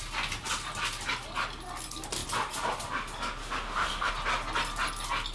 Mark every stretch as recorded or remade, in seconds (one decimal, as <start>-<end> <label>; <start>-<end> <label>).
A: 0.0-3.4 recorded; 3.4-4.1 remade; 4.1-5.3 recorded